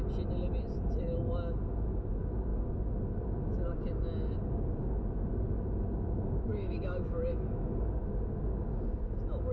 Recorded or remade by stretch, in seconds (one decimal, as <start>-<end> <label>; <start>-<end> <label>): 0.0-6.5 recorded; 6.5-7.5 remade; 7.5-9.5 recorded